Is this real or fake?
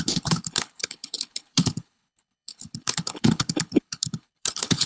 fake